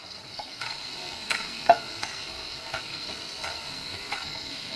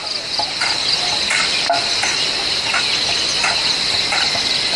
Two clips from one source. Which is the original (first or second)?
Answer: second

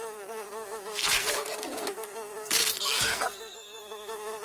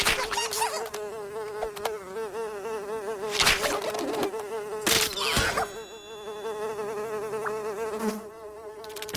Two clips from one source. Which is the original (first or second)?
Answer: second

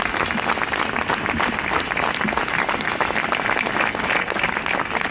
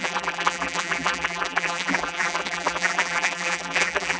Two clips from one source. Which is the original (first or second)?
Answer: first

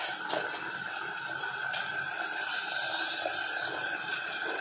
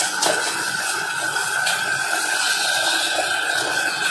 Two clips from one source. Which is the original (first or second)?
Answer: first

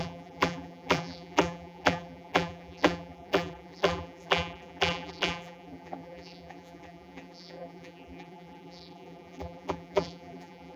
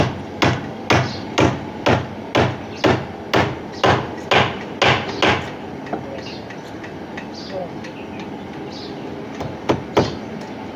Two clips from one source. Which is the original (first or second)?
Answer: second